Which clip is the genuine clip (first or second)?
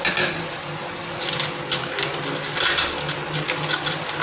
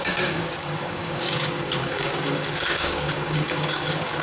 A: first